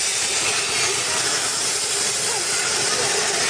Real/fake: real